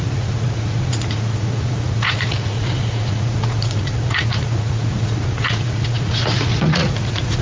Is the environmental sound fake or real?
fake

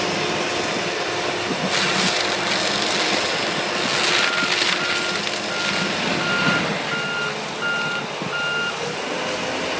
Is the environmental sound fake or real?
real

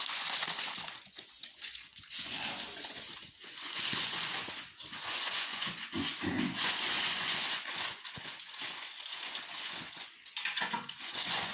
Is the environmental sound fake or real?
fake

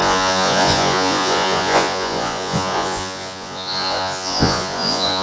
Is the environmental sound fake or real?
fake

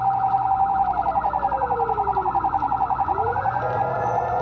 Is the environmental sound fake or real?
fake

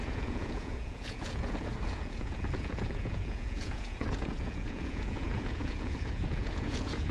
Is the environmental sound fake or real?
fake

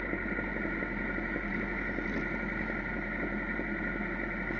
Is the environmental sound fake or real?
real